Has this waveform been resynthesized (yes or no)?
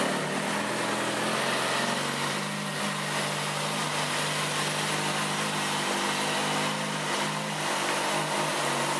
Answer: no